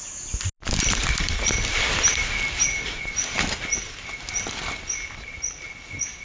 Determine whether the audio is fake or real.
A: real